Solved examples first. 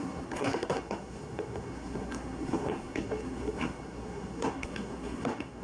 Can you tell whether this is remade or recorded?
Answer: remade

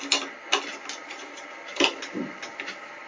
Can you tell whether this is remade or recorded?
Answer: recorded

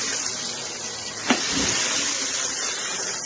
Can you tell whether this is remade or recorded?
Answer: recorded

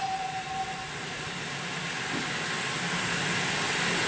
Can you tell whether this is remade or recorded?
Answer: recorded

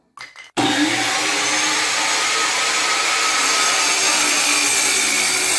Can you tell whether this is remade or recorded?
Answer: recorded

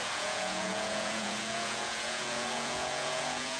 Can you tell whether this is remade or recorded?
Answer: remade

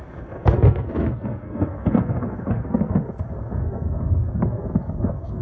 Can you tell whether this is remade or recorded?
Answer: remade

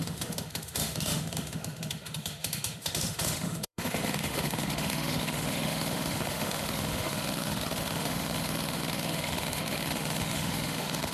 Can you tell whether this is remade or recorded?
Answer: remade